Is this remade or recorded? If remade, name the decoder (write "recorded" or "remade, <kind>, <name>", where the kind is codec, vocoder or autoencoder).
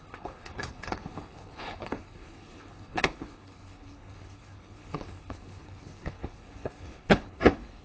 remade, codec, HILCodec